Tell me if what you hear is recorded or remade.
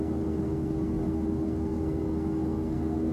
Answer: remade